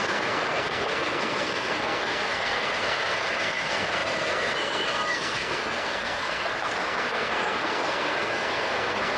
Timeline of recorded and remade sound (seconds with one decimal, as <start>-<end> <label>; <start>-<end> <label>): 0.0-9.2 remade

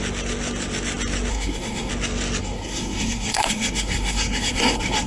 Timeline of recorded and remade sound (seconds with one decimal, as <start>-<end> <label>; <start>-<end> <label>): 0.0-1.3 recorded; 1.3-1.9 remade; 1.9-2.4 recorded; 2.4-5.1 remade

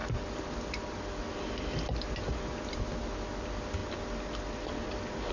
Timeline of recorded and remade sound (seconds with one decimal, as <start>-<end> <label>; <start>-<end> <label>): 0.0-5.3 recorded

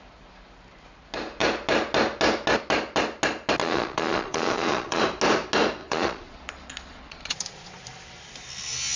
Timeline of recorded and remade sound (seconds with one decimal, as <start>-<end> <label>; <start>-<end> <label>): 0.0-3.6 recorded; 3.6-5.0 remade; 5.0-5.8 recorded; 5.8-7.8 remade; 7.8-9.0 recorded

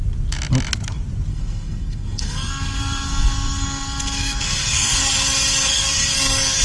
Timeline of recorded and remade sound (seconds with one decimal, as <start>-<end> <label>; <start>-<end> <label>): 0.0-1.3 recorded; 1.3-5.1 remade; 5.1-5.7 recorded; 5.7-6.6 remade

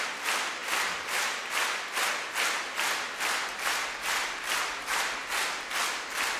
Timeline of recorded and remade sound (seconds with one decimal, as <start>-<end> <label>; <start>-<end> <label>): 0.0-6.4 recorded

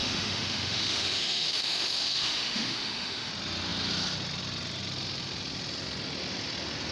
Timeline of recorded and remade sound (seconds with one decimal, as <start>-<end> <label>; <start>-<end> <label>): 0.0-3.3 remade; 3.3-6.9 recorded